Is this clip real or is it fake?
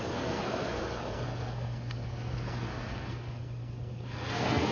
fake